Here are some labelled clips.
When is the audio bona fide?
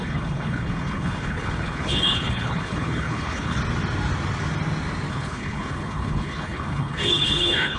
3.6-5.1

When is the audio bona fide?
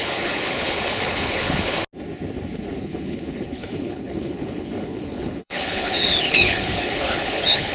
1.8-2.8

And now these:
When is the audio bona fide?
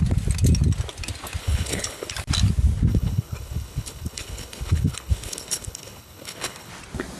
0.0-1.4; 2.1-2.9; 6.7-7.2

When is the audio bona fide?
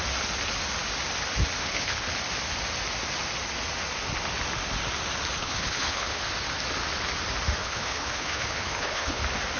0.0-1.6; 2.1-5.4; 6.2-7.6; 9.2-9.6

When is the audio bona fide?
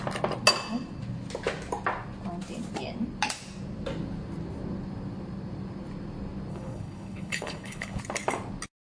0.0-6.5; 8.0-8.9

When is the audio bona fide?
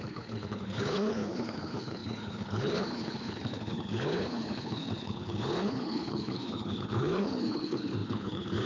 none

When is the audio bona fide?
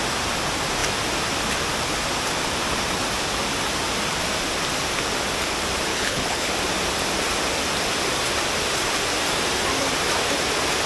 0.0-5.9; 6.5-10.9